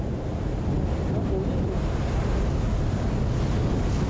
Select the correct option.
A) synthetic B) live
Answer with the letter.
B